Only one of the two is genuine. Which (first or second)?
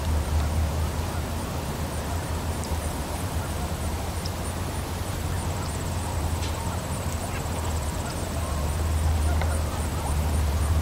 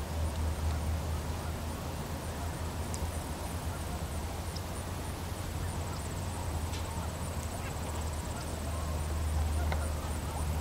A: second